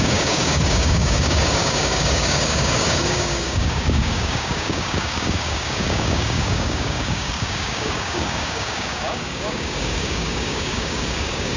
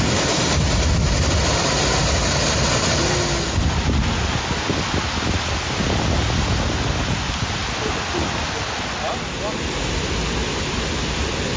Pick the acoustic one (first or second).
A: second